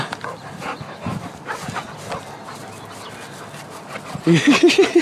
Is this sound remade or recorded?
recorded